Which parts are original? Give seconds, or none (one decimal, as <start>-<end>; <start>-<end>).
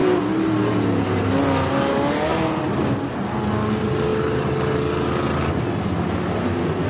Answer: 0.0-6.9